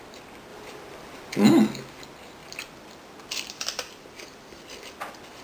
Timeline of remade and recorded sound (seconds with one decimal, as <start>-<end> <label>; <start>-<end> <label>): 0.0-0.5 recorded; 0.5-1.5 remade; 1.5-2.4 recorded; 2.4-5.4 remade